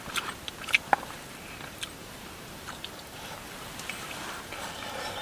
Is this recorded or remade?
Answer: remade